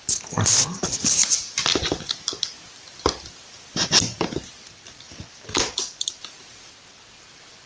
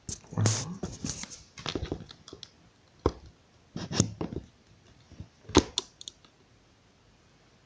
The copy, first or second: first